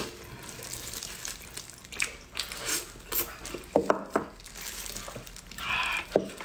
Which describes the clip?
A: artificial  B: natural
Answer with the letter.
B